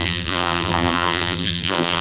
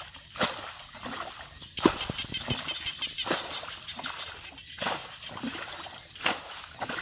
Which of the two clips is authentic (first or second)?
second